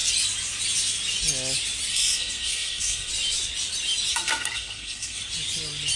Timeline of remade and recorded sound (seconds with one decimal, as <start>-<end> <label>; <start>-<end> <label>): 0.0-1.9 recorded; 1.9-3.1 remade; 3.1-4.1 recorded; 4.1-5.2 remade; 5.2-6.0 recorded